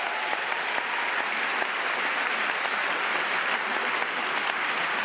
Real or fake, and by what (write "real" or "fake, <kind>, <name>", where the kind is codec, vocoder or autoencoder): real